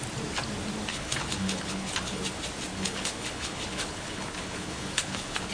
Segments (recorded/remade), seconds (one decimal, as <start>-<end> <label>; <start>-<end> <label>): 0.0-0.9 recorded; 0.9-2.2 remade; 2.2-2.7 recorded; 2.7-5.5 remade